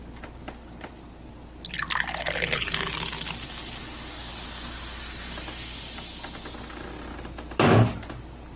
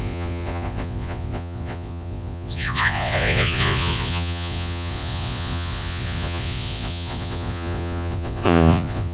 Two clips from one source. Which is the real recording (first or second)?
first